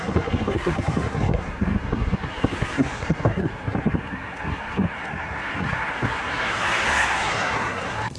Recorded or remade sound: remade